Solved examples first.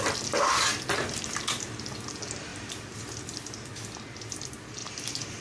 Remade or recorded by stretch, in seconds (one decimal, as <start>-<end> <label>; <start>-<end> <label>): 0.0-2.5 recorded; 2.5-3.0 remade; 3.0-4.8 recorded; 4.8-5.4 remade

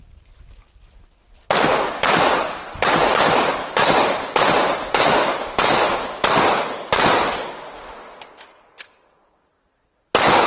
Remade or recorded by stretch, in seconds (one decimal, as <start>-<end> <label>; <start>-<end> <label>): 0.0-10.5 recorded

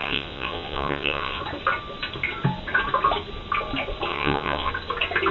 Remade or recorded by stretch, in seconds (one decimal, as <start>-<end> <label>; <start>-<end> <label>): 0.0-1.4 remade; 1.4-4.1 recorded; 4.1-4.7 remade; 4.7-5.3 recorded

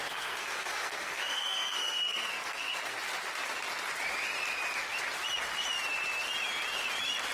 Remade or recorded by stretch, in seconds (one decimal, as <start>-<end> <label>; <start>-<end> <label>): 0.0-3.0 remade; 3.0-7.3 recorded

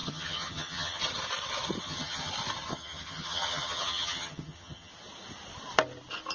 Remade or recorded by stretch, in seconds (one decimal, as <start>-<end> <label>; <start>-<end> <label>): 0.0-1.0 remade; 1.0-1.8 recorded; 1.8-2.3 remade; 2.3-2.7 recorded; 2.7-4.9 remade; 4.9-6.3 recorded

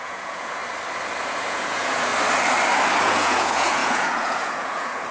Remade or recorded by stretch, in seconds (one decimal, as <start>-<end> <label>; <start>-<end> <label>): 0.0-0.6 remade; 0.6-1.2 recorded; 1.2-2.1 remade; 2.1-3.0 recorded; 3.0-5.1 remade

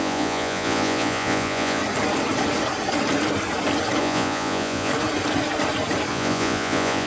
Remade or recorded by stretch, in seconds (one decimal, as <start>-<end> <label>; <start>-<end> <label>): 0.0-1.8 remade; 1.8-4.0 recorded; 4.0-4.9 remade; 4.9-6.1 recorded; 6.1-7.1 remade